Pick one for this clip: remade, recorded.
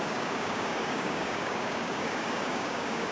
remade